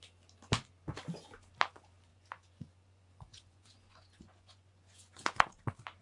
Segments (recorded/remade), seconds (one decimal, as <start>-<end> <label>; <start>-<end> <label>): 0.0-2.1 recorded; 2.1-5.5 remade; 5.5-6.0 recorded

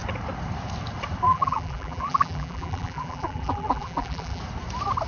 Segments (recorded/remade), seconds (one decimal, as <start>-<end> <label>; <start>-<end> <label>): 0.0-1.3 recorded; 1.3-4.4 remade; 4.4-5.1 recorded